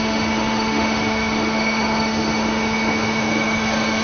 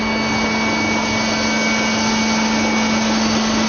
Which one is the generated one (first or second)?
first